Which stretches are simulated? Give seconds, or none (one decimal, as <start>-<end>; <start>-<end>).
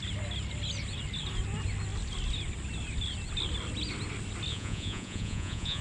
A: 4.5-5.8